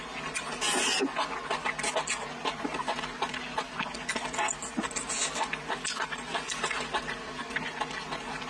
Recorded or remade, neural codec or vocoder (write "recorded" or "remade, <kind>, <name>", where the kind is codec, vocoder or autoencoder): recorded